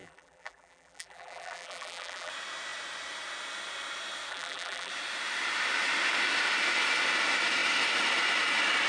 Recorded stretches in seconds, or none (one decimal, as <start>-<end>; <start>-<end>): 2.3-4.3; 4.9-8.9

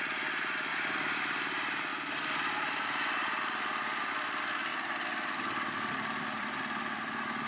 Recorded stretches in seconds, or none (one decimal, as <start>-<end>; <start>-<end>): 0.0-0.7; 1.2-1.9; 4.1-4.7

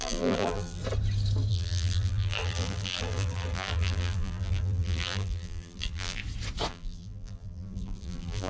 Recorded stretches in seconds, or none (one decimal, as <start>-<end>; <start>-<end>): 0.8-1.5; 6.2-6.7

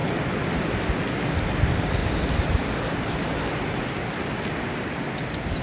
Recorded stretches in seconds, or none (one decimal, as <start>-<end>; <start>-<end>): 0.0-5.6